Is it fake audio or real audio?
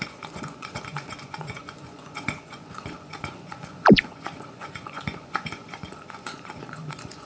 fake